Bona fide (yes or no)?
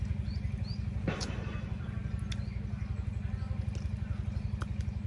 yes